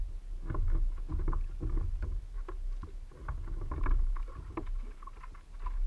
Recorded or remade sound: recorded